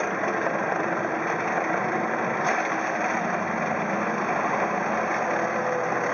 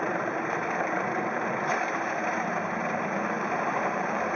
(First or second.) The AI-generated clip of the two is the second